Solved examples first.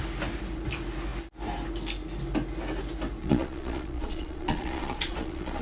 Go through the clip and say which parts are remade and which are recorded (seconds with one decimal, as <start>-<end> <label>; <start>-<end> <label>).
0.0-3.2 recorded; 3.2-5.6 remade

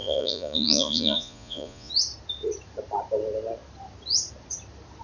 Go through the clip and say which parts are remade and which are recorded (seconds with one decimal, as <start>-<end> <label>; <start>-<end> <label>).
0.0-1.9 remade; 1.9-5.0 recorded

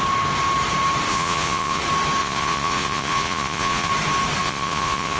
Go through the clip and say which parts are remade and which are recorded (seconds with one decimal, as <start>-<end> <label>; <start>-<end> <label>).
0.0-1.1 recorded; 1.1-1.8 remade; 1.8-2.2 recorded; 2.2-3.9 remade; 3.9-4.4 recorded; 4.4-5.2 remade

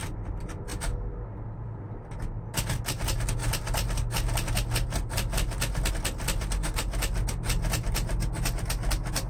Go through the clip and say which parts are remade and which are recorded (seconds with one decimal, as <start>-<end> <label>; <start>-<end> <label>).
0.0-9.3 recorded